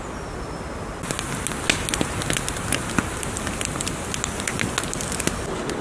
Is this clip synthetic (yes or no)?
no